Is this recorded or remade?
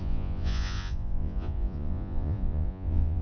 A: remade